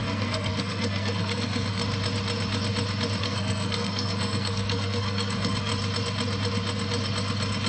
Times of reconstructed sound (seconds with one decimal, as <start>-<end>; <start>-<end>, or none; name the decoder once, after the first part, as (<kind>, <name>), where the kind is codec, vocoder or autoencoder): 0.0-1.8 (codec, SNAC); 3.2-5.7